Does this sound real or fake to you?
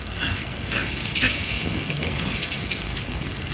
fake